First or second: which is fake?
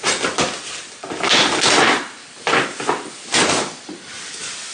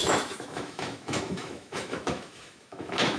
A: second